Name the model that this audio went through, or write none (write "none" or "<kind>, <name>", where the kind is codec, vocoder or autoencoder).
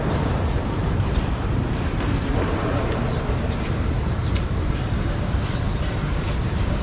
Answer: vocoder, BigVGAN v2